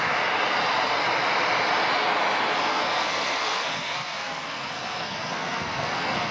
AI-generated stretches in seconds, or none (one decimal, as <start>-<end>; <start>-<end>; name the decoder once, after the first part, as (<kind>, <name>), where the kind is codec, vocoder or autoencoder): 2.7-6.3 (codec, SNAC)